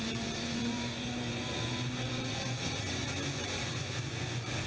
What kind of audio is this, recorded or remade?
remade